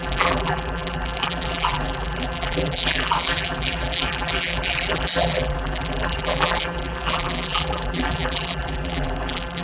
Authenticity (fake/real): fake